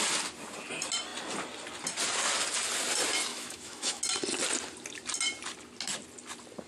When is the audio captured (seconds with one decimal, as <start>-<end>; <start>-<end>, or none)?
0.0-3.3; 4.0-6.7